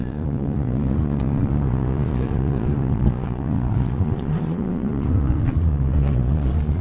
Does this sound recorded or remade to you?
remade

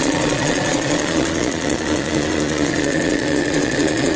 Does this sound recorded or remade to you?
remade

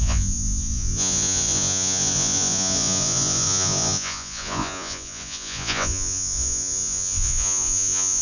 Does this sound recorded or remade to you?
remade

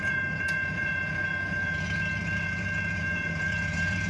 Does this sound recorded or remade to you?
remade